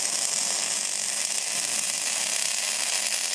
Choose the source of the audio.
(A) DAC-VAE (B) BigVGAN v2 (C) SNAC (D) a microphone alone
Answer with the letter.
D